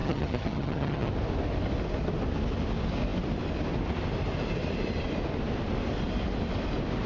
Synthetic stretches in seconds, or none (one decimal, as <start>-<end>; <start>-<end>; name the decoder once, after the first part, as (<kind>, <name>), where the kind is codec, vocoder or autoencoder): 0.0-1.1 (vocoder, HiFi-GAN)